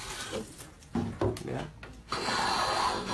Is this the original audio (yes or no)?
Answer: yes